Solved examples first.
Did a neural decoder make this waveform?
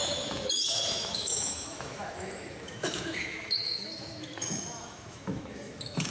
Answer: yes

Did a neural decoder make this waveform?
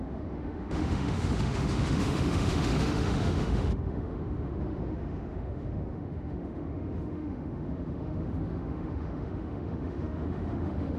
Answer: yes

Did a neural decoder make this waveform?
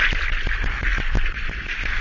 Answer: no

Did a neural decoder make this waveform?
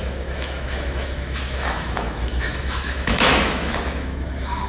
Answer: yes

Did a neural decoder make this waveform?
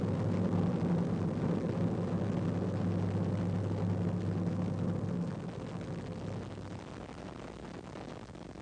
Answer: no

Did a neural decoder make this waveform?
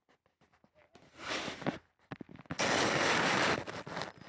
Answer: no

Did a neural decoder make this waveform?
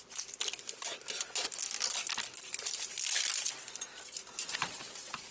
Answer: no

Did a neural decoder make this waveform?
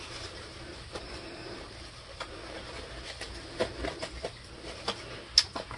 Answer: no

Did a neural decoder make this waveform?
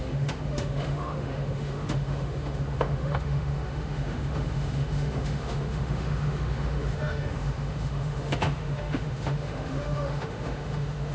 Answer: yes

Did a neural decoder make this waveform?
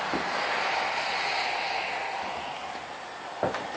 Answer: no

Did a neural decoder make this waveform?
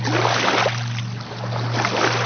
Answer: no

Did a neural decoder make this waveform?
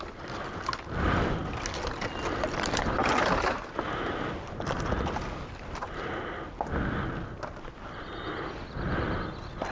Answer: no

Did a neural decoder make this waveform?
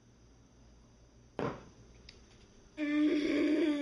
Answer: no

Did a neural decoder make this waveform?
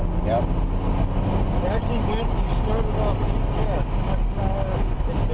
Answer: no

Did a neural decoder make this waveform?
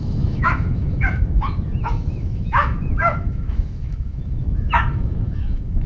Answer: yes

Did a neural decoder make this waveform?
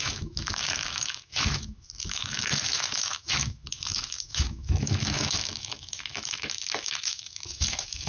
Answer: yes